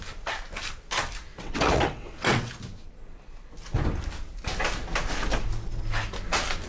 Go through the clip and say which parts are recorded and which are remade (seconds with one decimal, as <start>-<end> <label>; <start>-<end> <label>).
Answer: 0.0-1.3 recorded; 1.3-2.5 remade; 2.5-6.7 recorded